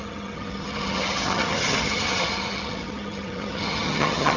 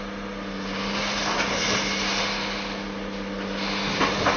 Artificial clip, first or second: first